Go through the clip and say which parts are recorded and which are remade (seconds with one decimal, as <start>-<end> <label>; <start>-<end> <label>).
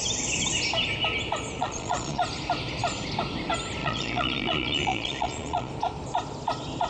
0.0-1.6 recorded; 1.6-2.2 remade; 2.2-3.8 recorded; 3.8-5.7 remade; 5.7-6.9 recorded